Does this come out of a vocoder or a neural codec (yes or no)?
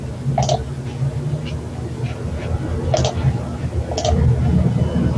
no